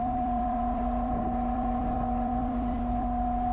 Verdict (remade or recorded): remade